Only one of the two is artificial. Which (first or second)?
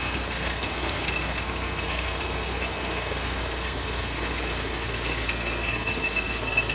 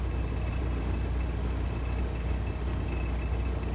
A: first